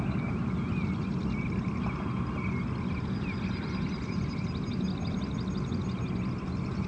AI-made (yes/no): no